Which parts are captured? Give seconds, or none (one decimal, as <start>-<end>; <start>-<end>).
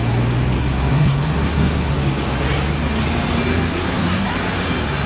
0.0-0.6; 1.9-3.7; 4.3-5.1